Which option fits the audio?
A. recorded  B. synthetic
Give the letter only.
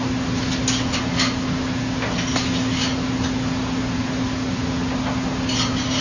A